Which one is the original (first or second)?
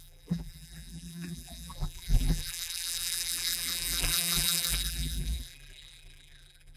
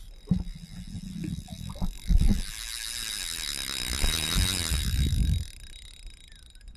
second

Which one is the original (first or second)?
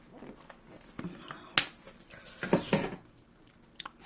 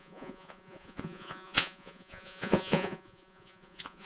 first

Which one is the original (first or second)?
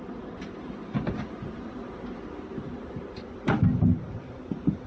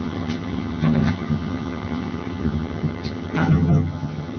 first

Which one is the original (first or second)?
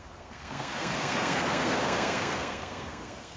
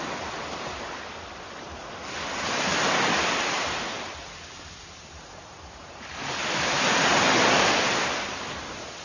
second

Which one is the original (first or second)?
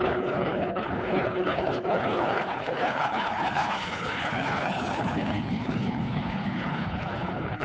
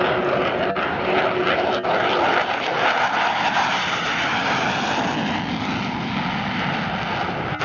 second